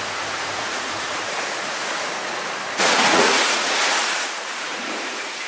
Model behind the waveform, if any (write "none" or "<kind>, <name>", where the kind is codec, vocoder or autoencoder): vocoder, Vocos